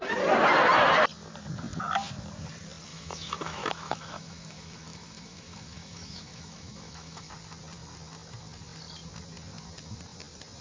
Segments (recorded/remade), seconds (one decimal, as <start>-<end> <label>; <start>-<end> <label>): 0.0-2.9 recorded; 2.9-7.3 remade; 7.3-10.6 recorded